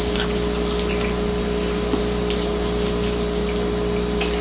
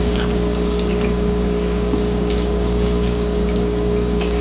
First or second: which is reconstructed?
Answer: second